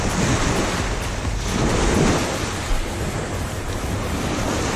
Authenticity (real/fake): real